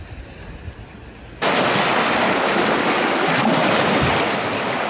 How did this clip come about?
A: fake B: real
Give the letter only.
B